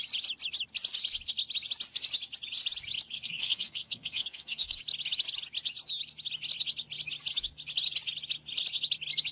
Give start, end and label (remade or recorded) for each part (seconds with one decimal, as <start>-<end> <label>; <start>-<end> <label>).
0.0-3.1 recorded; 3.1-4.8 remade; 4.8-9.3 recorded